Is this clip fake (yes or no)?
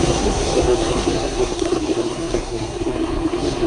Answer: yes